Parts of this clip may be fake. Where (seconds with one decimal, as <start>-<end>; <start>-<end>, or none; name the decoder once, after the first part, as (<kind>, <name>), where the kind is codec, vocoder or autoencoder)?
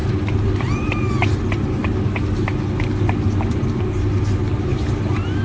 none